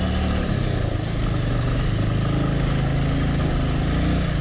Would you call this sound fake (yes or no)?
no